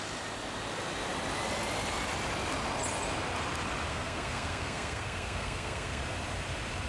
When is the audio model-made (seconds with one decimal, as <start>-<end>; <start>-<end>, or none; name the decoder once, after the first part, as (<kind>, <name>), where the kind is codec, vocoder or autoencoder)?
3.9-6.0 (codec, SNAC)